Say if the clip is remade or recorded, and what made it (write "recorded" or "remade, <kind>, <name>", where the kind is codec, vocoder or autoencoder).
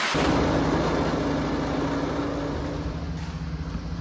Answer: recorded